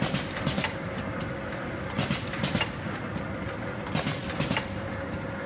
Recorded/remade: remade